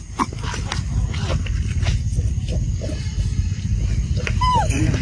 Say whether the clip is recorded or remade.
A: recorded